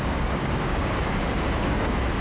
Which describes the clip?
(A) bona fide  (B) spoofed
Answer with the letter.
B